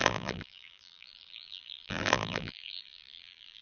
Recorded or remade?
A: remade